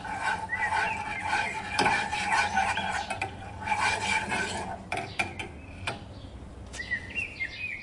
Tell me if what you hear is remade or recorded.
recorded